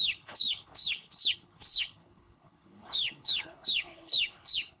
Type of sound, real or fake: fake